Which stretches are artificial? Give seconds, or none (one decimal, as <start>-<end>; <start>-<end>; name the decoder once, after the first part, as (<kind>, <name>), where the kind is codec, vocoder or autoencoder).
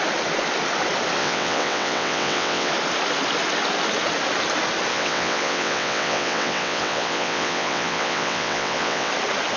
1.2-2.7 (vocoder, WaveNeXt); 4.9-9.1